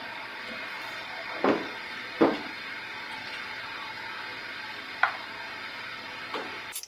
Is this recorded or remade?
recorded